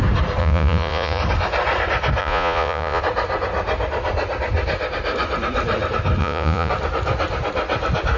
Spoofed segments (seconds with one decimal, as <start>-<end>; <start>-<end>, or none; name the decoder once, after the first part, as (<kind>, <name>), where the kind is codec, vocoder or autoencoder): 0.4-1.2 (vocoder, Vocos); 2.2-3.0; 6.2-6.7

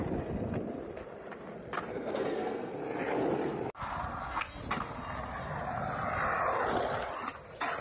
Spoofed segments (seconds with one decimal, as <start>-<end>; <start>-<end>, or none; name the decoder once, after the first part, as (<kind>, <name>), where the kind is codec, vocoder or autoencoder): 1.9-2.7 (codec, SNAC)